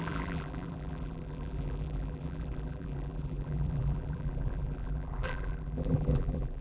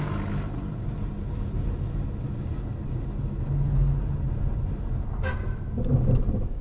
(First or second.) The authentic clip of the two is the second